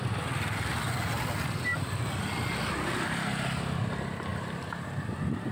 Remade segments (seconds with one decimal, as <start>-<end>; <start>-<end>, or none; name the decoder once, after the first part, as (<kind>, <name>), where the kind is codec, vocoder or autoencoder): none